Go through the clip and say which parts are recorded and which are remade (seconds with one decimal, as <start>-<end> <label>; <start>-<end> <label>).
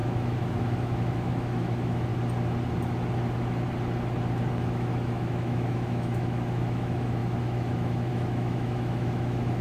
0.0-2.1 remade; 2.1-4.5 recorded; 4.5-9.6 remade